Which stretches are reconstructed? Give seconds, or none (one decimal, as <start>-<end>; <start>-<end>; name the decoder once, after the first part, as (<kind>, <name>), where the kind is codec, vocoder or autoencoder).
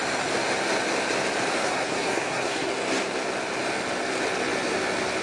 1.5-2.7 (codec, SNAC)